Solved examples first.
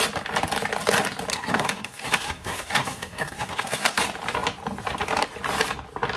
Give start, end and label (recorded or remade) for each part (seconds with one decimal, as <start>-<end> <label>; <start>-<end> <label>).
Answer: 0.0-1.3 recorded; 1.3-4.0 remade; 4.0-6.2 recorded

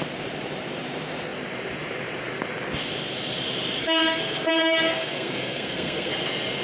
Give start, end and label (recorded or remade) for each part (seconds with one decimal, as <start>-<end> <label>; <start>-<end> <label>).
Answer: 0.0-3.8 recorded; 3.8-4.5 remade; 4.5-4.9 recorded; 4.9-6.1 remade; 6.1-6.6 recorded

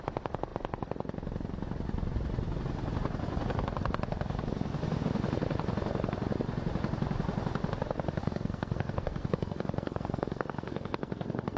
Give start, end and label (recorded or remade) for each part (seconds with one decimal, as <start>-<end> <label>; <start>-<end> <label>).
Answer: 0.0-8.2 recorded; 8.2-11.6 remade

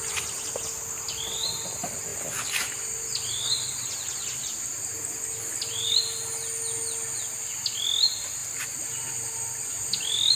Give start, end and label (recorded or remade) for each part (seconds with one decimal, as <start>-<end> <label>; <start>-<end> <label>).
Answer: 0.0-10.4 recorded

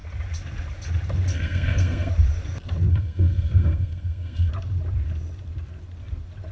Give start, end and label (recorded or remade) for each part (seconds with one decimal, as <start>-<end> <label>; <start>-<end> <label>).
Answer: 0.0-1.3 recorded; 1.3-2.1 remade; 2.1-2.9 recorded; 2.9-4.5 remade; 4.5-6.5 recorded